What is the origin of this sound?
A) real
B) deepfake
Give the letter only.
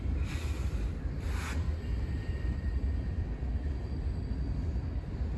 A